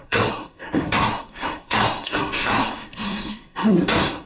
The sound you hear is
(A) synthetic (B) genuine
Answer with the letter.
A